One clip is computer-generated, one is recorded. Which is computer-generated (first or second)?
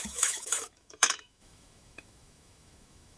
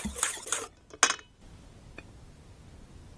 first